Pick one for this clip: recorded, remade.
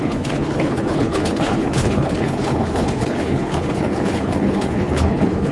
remade